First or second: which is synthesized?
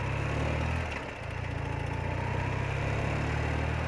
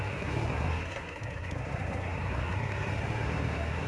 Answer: second